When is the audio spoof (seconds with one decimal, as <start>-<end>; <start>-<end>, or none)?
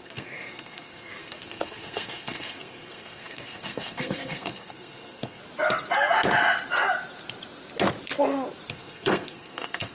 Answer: 0.0-5.4; 8.7-9.9